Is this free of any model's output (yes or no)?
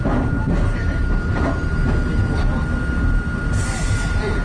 yes